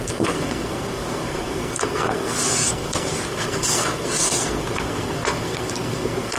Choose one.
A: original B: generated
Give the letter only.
B